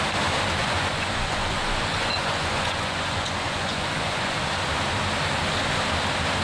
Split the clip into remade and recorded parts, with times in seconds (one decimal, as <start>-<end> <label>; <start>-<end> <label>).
0.0-0.6 recorded; 0.6-4.4 remade; 4.4-6.4 recorded